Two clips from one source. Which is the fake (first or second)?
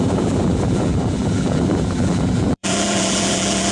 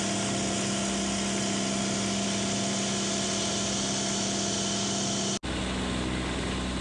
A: first